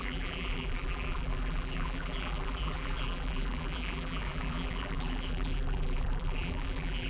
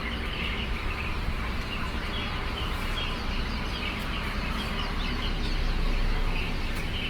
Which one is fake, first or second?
first